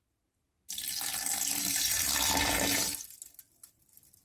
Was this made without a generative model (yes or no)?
yes